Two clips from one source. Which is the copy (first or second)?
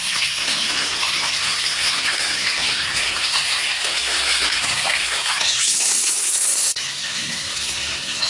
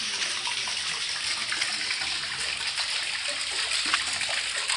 first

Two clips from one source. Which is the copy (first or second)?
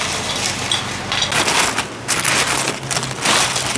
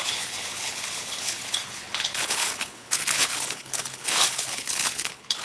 second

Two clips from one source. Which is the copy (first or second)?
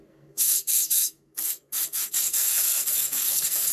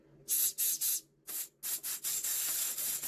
first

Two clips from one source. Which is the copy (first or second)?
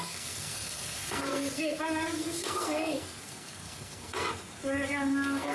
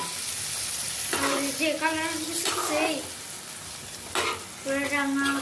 first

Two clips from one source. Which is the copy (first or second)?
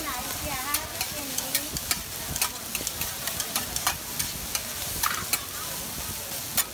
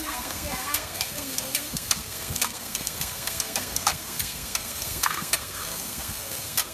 second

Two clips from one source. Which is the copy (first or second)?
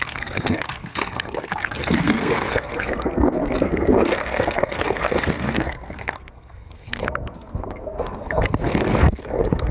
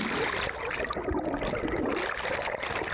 first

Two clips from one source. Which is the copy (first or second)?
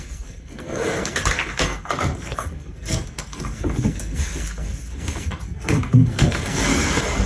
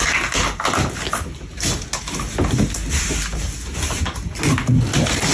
first